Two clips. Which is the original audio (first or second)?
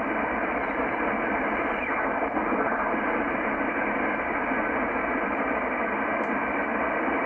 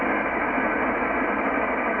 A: second